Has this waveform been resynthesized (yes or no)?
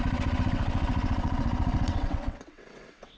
yes